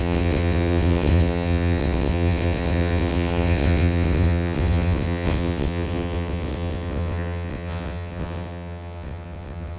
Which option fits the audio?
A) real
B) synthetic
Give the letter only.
B